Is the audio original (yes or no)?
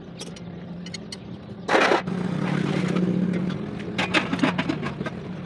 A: yes